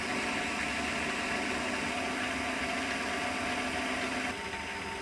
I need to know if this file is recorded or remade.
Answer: recorded